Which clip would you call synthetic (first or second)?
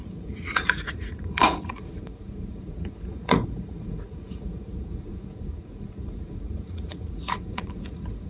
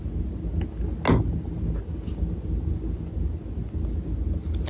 first